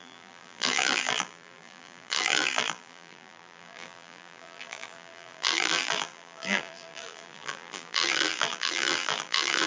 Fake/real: fake